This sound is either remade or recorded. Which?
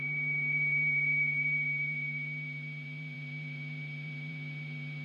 remade